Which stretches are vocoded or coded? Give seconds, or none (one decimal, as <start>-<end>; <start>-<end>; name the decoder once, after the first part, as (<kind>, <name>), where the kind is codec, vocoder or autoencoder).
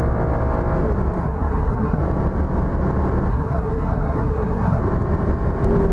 1.2-2.0 (codec, SNAC); 3.3-4.8